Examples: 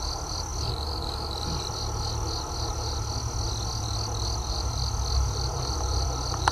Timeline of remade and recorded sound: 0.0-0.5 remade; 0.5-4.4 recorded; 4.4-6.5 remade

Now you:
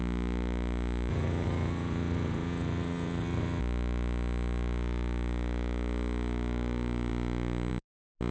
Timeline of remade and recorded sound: 0.0-1.1 recorded; 1.1-3.6 remade; 3.6-8.3 recorded

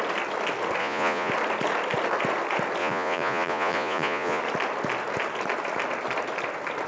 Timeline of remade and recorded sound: 0.0-0.8 recorded; 0.8-1.3 remade; 1.3-2.8 recorded; 2.8-4.4 remade; 4.4-6.9 recorded

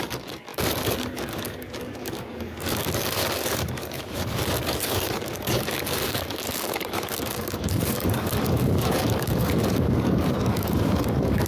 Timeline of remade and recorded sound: 0.0-11.5 remade